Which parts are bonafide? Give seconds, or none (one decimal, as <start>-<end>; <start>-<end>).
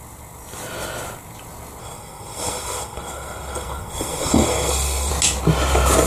0.0-1.8; 5.1-6.1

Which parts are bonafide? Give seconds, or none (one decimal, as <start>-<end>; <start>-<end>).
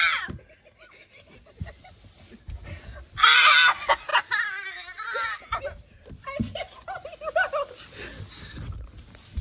0.0-9.4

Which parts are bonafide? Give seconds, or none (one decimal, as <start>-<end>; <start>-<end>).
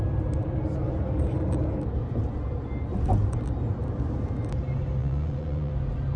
0.0-5.0; 5.7-6.2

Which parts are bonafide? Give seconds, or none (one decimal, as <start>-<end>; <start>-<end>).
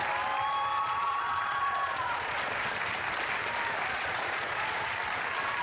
0.0-0.8; 2.8-3.9; 4.9-5.6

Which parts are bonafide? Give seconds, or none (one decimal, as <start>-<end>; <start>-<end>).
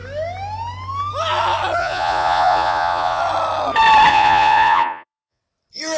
0.0-1.8; 3.2-4.1; 5.4-6.0